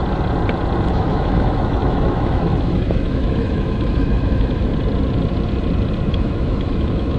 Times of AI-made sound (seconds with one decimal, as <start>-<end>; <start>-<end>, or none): 0.9-4.7; 6.1-7.2